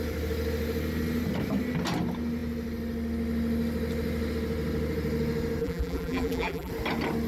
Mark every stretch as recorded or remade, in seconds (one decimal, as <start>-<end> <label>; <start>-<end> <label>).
0.0-5.6 recorded; 5.6-6.7 remade; 6.7-7.3 recorded